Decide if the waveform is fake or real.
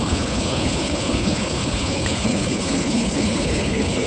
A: fake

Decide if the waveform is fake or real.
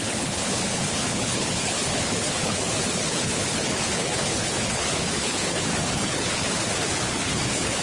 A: fake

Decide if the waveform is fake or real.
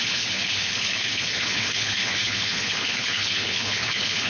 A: fake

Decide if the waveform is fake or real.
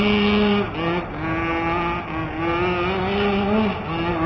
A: real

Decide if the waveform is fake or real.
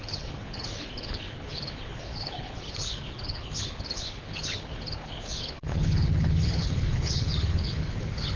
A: fake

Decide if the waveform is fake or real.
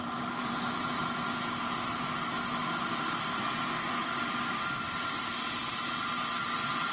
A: real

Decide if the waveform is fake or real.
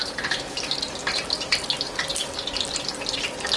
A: real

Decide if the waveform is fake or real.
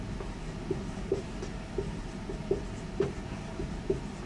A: real